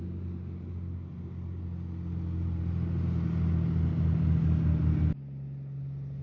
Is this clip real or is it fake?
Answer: real